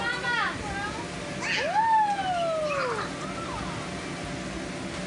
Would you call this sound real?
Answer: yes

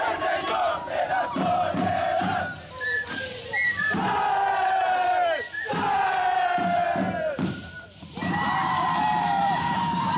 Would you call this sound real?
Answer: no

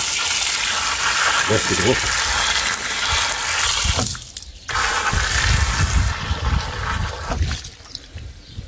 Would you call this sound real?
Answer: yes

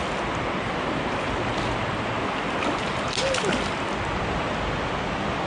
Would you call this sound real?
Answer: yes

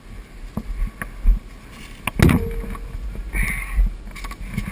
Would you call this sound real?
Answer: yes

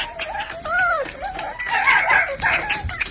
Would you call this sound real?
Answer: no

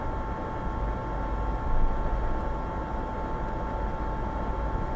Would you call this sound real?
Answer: yes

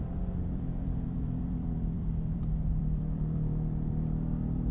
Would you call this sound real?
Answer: no